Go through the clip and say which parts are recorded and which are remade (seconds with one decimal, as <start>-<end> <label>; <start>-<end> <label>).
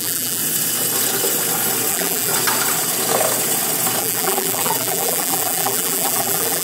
0.0-0.4 remade; 0.4-1.9 recorded; 1.9-2.3 remade; 2.3-4.0 recorded; 4.0-6.6 remade